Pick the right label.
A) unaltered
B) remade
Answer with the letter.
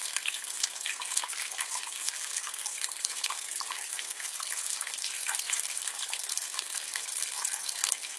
B